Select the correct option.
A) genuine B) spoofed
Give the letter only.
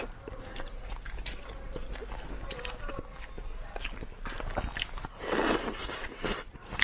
A